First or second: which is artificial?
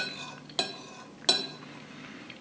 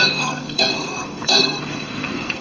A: second